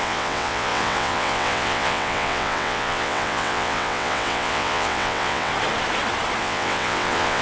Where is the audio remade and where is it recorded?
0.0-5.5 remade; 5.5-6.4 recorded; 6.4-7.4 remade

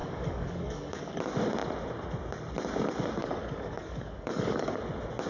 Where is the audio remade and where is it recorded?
0.0-1.2 remade; 1.2-3.2 recorded; 3.2-4.8 remade; 4.8-5.3 recorded

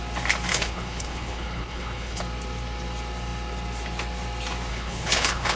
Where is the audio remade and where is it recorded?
0.0-0.5 recorded; 0.5-2.2 remade; 2.2-4.7 recorded; 4.7-5.6 remade

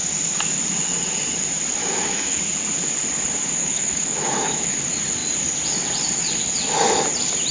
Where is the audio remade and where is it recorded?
0.0-1.8 recorded; 1.8-2.4 remade; 2.4-3.6 recorded; 3.6-4.7 remade; 4.7-7.5 recorded

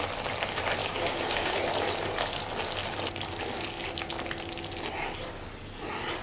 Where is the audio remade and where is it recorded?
0.0-0.8 recorded; 0.8-1.6 remade; 1.6-6.2 recorded

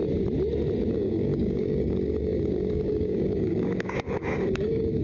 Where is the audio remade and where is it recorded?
0.0-0.9 recorded; 0.9-5.0 remade